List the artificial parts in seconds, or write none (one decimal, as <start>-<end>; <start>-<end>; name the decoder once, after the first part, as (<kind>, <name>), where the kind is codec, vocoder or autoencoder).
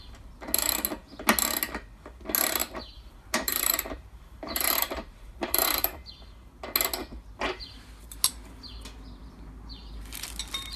2.6-6.1 (vocoder, BigVGAN v2)